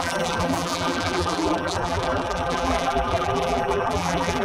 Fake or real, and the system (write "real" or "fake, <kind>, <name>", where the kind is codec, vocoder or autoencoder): fake, vocoder, BigVGAN v2